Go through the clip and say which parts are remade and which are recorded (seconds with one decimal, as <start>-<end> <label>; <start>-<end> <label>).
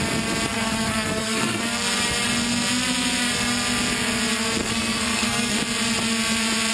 0.0-0.5 recorded; 0.5-1.6 remade; 1.6-4.6 recorded; 4.6-5.6 remade; 5.6-6.7 recorded